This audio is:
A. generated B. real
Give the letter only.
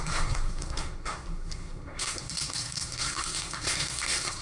A